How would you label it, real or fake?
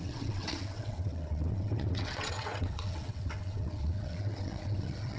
fake